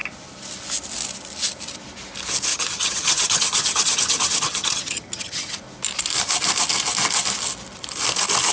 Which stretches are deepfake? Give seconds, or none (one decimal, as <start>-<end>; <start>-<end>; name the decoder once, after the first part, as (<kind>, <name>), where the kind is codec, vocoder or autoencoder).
2.5-5.6 (vocoder, HiFi-GAN)